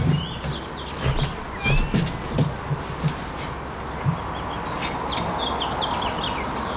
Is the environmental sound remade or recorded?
recorded